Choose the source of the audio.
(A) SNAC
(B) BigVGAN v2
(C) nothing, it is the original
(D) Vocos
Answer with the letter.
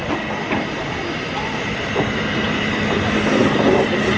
C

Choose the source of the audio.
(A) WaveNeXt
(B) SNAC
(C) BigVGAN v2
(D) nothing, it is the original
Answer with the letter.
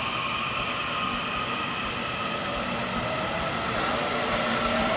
D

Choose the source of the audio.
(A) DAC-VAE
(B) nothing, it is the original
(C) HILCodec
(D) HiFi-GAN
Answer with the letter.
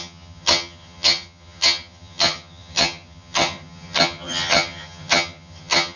D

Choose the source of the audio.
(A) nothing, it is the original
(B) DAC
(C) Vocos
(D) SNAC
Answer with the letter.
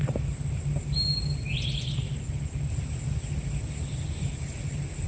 A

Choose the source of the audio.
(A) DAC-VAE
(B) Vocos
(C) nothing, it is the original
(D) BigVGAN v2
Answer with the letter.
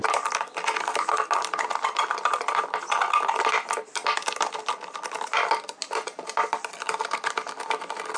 C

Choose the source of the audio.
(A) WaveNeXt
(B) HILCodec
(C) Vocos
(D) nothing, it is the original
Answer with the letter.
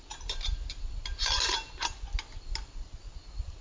D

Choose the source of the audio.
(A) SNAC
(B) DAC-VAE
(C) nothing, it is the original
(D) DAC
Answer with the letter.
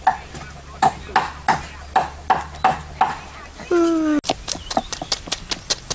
C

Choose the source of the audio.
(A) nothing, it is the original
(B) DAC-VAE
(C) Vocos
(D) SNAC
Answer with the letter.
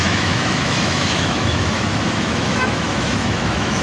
B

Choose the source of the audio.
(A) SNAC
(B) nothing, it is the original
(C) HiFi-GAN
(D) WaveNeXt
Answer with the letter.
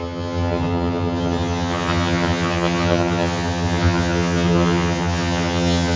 C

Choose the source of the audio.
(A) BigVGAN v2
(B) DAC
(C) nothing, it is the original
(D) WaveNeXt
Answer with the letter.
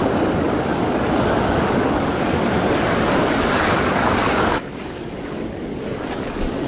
B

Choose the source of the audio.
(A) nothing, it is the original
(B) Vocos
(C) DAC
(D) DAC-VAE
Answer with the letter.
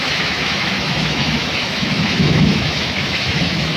D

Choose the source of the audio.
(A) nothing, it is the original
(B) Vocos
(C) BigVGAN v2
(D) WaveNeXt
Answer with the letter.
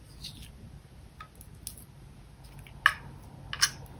A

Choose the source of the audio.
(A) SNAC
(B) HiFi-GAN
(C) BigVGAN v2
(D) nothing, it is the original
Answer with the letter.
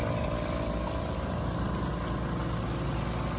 D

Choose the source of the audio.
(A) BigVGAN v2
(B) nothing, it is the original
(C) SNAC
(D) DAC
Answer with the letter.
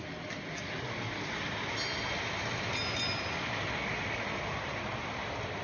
B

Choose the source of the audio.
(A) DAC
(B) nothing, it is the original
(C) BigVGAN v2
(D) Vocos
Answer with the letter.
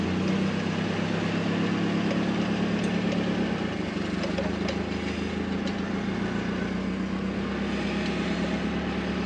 B